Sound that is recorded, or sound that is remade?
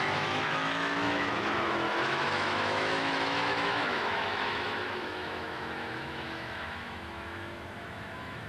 remade